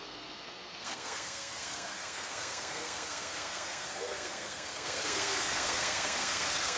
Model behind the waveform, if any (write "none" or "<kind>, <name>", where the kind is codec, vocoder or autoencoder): codec, SNAC